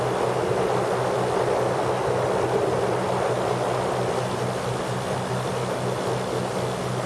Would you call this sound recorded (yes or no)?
yes